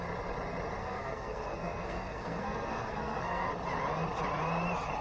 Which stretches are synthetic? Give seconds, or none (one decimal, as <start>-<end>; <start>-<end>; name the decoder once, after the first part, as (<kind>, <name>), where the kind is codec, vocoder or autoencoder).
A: 0.8-3.5 (codec, SNAC)